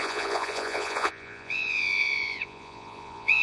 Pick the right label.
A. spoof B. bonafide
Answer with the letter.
A